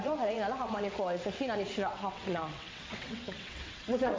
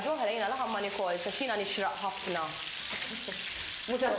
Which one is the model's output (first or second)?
first